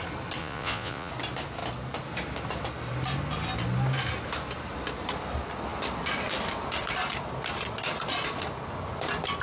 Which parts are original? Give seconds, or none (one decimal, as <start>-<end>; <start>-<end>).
0.0-0.4; 1.1-9.4